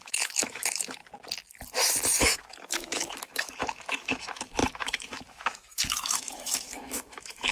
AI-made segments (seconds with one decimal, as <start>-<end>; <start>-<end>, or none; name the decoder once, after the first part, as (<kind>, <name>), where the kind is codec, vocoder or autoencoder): 0.0-1.0 (autoencoder, DAC-VAE); 2.2-7.5